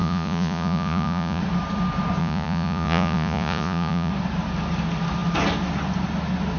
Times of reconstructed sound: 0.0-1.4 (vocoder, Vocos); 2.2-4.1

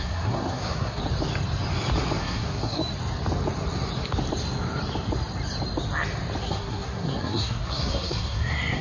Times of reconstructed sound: 0.0-1.0 (codec, SNAC); 2.2-2.8; 6.4-8.8

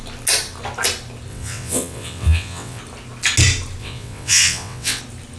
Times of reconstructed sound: 1.3-2.8 (vocoder, WaveNeXt); 3.8-5.0

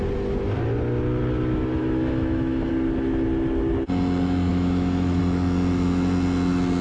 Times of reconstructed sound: 1.8-2.7 (autoencoder, DAC-VAE); 4.5-5.2